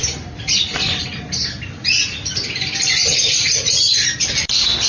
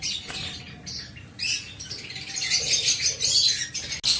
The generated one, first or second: first